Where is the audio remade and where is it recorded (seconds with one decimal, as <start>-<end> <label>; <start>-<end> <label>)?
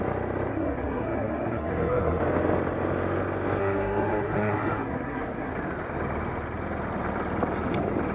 0.0-0.5 recorded; 0.5-2.2 remade; 2.2-3.6 recorded; 3.6-5.5 remade; 5.5-8.1 recorded